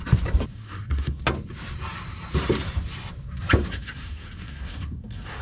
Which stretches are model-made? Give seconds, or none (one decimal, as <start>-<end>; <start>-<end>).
0.5-1.2; 3.6-5.4